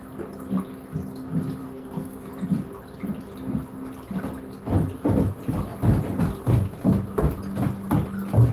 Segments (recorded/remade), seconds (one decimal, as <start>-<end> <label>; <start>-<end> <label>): 0.0-1.6 recorded; 1.6-2.3 remade; 2.3-8.5 recorded